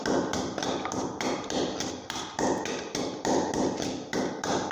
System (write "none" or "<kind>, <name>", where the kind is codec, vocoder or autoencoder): none